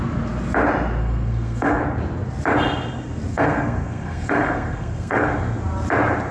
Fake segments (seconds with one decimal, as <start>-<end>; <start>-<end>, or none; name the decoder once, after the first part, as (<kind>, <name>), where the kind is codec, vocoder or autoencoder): 1.0-1.8 (codec, SNAC); 3.3-5.3